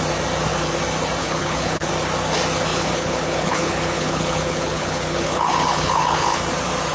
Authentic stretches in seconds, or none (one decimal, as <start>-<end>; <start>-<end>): 0.0-1.2; 1.9-2.7; 6.4-6.9